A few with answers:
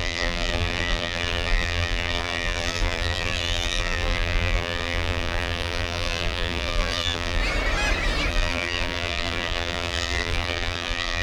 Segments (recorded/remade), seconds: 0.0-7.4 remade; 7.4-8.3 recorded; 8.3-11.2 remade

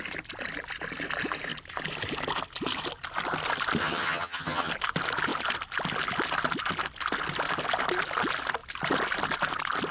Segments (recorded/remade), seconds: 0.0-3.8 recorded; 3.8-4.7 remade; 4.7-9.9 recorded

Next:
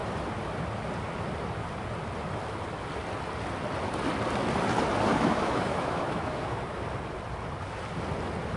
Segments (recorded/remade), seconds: 0.0-5.1 recorded; 5.1-6.6 remade; 6.6-8.6 recorded

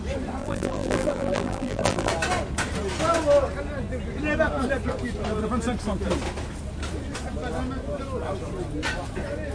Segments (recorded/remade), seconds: 0.0-0.4 recorded; 0.4-2.1 remade; 2.1-9.5 recorded

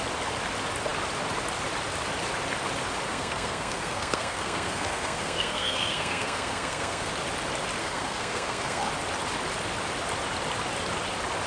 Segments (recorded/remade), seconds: 0.0-3.1 recorded; 3.1-7.1 remade; 7.1-7.8 recorded; 7.8-8.9 remade; 8.9-11.5 recorded